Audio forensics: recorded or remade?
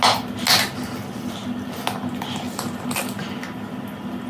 recorded